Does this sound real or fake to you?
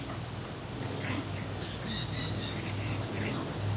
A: real